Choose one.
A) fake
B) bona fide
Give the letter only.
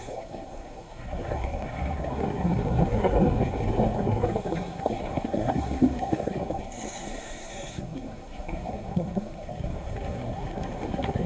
A